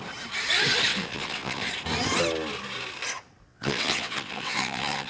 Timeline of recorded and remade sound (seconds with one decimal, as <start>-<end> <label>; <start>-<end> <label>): 0.0-0.9 recorded; 0.9-1.7 remade; 1.7-3.5 recorded; 3.5-5.1 remade